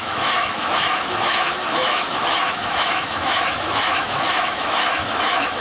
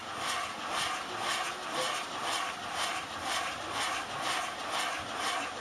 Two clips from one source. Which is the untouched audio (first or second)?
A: second